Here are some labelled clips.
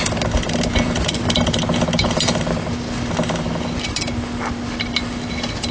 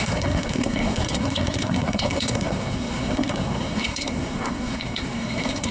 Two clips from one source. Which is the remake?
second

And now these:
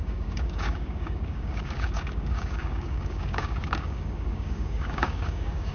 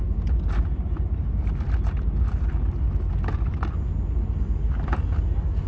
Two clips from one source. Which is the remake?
first